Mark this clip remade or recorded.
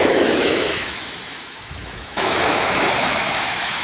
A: remade